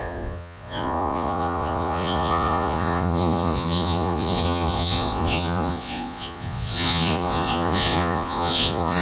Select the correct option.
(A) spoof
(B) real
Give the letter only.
A